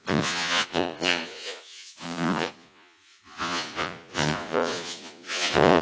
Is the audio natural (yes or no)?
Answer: no